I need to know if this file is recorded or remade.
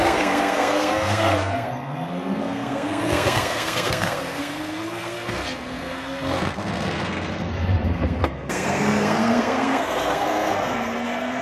remade